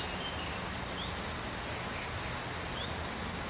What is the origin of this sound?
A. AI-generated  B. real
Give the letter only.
B